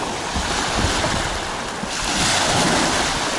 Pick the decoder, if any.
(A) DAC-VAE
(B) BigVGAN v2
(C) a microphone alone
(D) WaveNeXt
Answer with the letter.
C